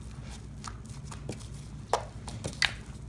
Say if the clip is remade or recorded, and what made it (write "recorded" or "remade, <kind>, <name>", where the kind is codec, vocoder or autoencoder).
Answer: recorded